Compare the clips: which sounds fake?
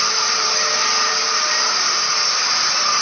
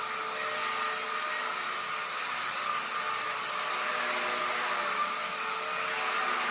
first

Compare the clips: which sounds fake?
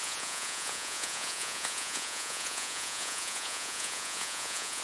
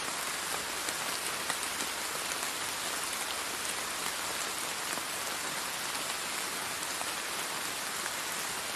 first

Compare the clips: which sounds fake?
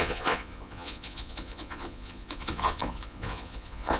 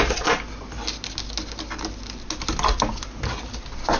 first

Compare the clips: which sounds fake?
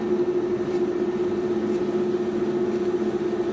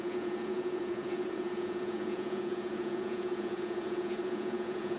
second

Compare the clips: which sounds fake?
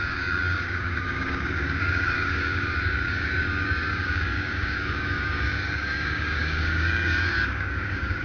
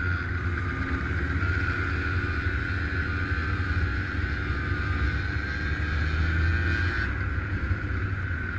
first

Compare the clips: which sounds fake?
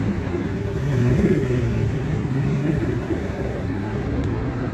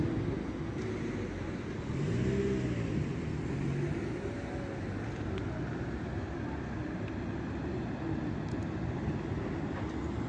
first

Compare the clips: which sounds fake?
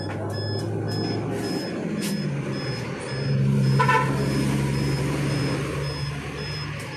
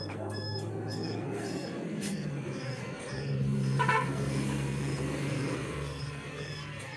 second